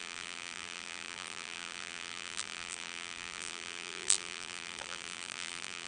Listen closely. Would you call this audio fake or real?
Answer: fake